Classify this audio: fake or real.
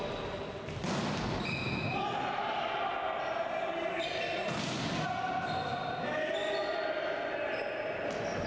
real